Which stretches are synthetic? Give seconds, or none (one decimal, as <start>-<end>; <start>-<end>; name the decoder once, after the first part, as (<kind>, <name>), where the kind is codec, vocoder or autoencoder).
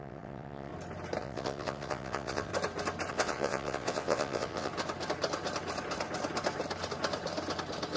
0.0-0.7 (vocoder, WaveNeXt); 1.2-2.5; 3.1-4.7